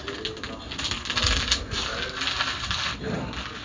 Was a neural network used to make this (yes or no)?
no